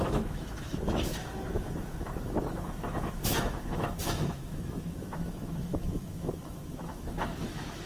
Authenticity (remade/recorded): remade